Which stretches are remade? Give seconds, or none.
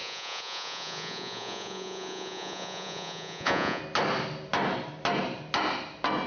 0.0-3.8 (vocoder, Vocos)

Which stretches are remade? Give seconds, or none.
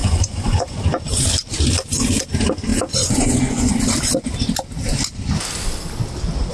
0.0-0.8 (vocoder, Vocos); 2.7-3.7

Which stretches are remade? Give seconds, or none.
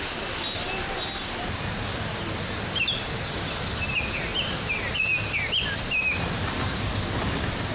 none